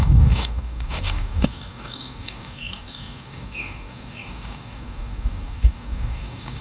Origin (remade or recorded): remade